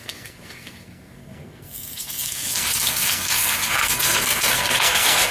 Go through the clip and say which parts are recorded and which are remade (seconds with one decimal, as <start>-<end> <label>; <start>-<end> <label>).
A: 0.0-5.3 remade